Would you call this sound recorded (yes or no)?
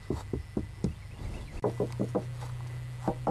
yes